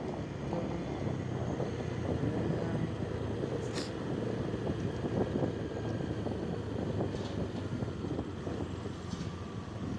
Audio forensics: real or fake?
real